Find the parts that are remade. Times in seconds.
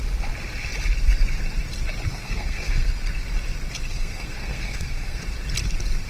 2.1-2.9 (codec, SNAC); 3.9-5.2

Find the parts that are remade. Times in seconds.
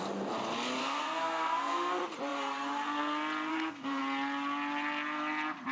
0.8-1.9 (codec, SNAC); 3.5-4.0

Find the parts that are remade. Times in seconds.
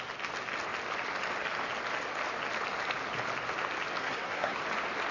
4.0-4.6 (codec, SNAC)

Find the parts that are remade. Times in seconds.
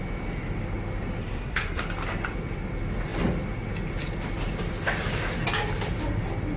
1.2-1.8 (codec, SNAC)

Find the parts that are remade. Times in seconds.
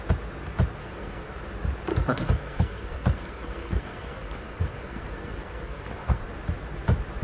0.8-1.5 (codec, SNAC); 1.9-6.2